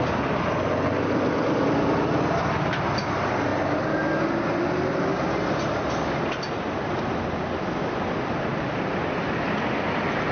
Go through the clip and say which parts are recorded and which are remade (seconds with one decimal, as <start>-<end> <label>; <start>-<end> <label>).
0.0-10.3 recorded

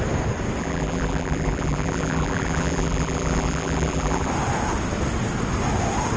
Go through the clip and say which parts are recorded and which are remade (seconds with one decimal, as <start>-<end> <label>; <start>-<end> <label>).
0.0-0.6 recorded; 0.6-4.3 remade; 4.3-6.2 recorded

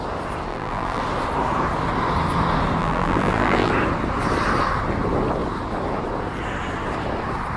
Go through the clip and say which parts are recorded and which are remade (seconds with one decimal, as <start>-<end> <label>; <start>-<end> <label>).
0.0-0.5 recorded; 0.5-1.0 remade; 1.0-2.8 recorded; 2.8-3.7 remade; 3.7-7.6 recorded

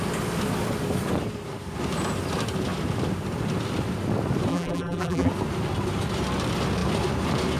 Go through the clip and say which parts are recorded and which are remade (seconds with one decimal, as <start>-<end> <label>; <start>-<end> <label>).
0.0-4.5 recorded; 4.5-5.3 remade; 5.3-7.6 recorded

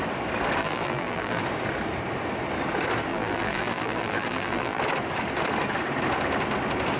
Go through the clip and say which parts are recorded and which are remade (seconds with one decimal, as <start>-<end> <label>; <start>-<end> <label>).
0.0-0.6 recorded; 0.6-1.4 remade; 1.4-3.1 recorded; 3.1-4.8 remade; 4.8-7.0 recorded

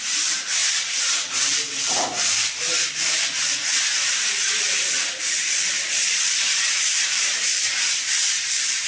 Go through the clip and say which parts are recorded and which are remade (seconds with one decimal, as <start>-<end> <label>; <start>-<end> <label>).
0.0-0.6 remade; 0.6-1.4 recorded; 1.4-3.7 remade; 3.7-5.2 recorded; 5.2-8.9 remade

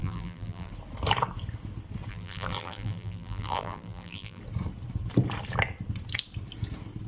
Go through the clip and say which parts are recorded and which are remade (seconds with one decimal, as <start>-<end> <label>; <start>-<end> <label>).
0.0-0.7 remade; 0.7-2.1 recorded; 2.1-4.4 remade; 4.4-7.1 recorded

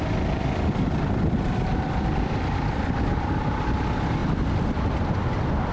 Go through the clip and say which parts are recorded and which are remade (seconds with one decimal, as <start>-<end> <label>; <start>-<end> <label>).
0.0-5.7 remade